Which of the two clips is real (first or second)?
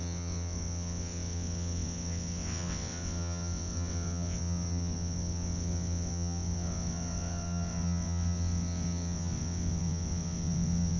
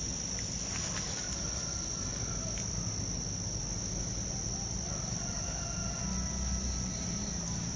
second